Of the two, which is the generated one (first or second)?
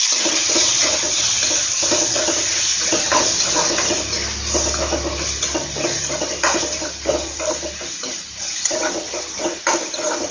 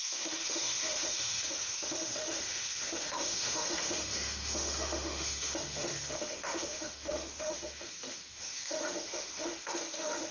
second